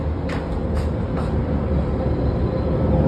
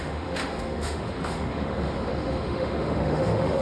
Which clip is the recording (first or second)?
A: first